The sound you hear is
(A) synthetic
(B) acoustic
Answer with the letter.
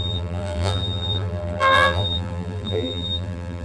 A